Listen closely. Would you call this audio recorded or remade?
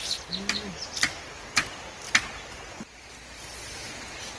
recorded